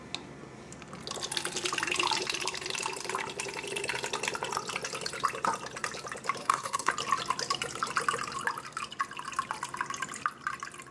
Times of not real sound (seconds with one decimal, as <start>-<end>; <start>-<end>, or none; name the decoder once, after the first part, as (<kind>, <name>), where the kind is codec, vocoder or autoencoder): 6.4-6.9 (codec, SNAC)